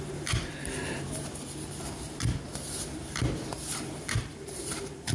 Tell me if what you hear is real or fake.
fake